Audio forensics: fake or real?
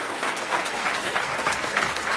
fake